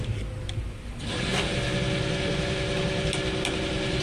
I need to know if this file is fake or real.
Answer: real